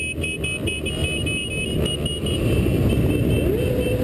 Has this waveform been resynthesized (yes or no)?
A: no